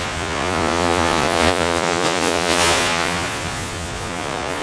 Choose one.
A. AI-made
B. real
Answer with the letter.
A